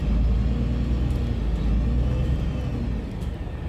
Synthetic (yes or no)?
no